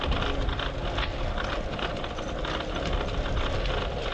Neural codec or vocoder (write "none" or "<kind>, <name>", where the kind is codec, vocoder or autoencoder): none